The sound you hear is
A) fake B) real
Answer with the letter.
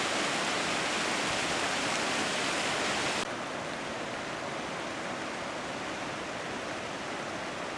B